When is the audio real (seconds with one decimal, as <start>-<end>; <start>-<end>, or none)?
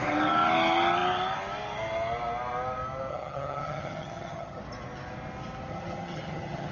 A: 0.0-3.1; 4.6-5.7